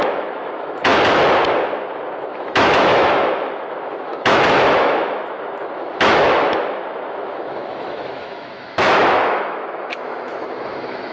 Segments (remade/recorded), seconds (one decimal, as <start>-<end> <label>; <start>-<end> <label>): 0.0-0.9 remade; 0.9-2.3 recorded; 2.3-11.1 remade